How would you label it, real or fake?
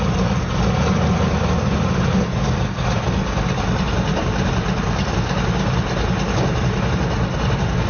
real